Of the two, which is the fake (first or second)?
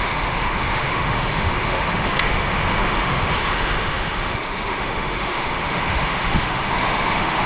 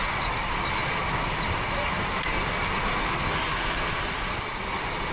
first